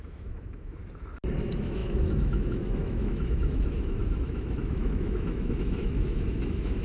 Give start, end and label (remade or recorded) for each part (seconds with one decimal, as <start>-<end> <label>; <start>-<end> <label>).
0.0-0.8 remade; 0.8-1.4 recorded; 1.4-6.8 remade